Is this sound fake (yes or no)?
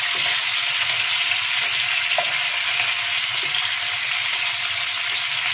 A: no